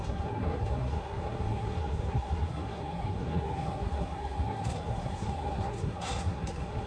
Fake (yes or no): yes